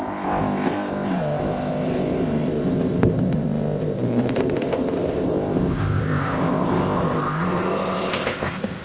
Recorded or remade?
remade